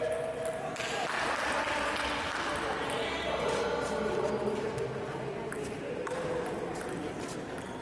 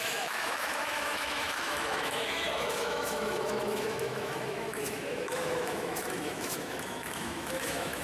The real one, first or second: first